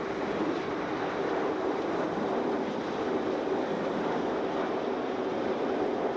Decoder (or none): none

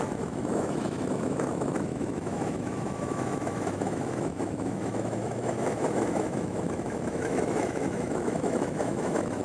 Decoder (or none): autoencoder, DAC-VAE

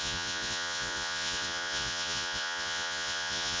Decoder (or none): vocoder, Vocos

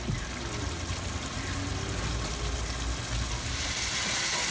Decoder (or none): none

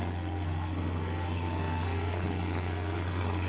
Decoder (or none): codec, SNAC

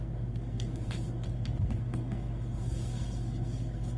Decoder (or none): codec, SNAC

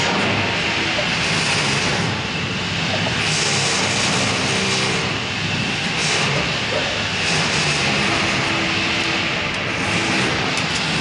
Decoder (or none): none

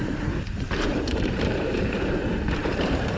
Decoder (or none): vocoder, BigVGAN v2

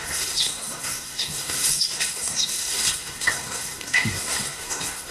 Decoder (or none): codec, SNAC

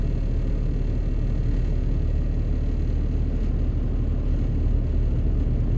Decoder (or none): none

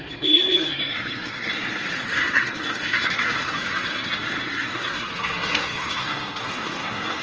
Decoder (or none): codec, SNAC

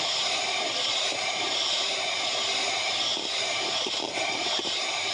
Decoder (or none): vocoder, BigVGAN v2